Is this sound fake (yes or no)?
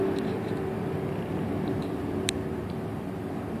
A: yes